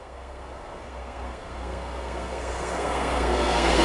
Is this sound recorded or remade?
remade